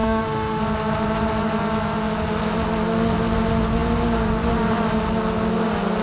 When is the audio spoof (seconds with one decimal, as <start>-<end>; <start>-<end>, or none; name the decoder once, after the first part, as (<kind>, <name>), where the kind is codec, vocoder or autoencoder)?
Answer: 0.0-0.6 (autoencoder, DAC-VAE)